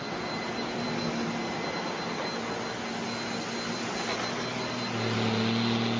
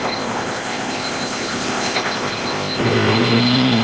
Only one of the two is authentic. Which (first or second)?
first